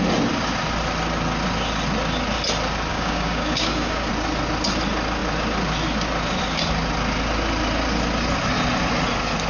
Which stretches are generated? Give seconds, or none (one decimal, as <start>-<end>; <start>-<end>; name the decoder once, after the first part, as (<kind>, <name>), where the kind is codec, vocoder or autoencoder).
2.9-4.1 (codec, DAC)